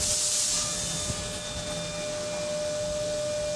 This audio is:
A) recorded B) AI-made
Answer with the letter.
A